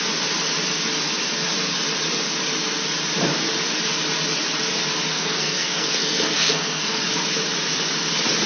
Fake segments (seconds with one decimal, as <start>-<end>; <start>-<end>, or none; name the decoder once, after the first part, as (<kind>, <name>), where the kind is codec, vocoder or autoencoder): 5.1-7.0 (codec, SNAC)